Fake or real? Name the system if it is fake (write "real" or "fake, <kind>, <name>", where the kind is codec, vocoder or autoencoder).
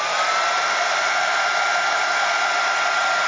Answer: real